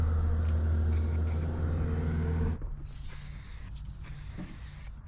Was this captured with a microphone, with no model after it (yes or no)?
yes